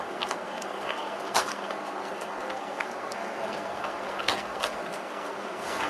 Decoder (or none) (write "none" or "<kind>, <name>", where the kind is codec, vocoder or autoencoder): codec, SNAC